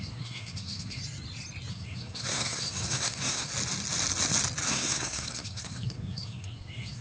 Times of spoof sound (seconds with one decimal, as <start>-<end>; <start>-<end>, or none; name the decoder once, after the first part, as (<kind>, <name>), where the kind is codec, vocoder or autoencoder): 0.0-1.0 (codec, SNAC); 1.7-3.5; 4.7-7.0